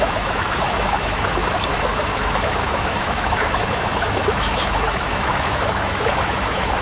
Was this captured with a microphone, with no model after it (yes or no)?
no